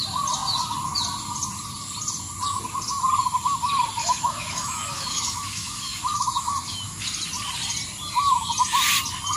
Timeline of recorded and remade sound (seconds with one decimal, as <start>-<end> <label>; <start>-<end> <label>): 0.0-4.0 recorded; 4.0-7.0 remade; 7.0-9.4 recorded